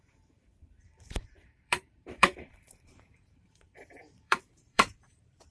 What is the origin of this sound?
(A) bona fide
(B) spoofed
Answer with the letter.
B